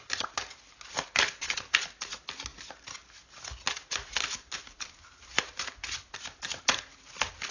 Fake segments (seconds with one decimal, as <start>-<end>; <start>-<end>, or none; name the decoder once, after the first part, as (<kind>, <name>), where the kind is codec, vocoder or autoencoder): none